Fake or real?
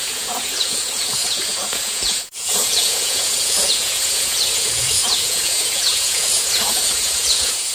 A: fake